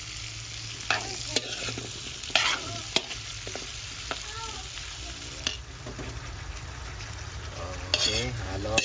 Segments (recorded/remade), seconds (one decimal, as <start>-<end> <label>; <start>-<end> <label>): 0.0-8.8 recorded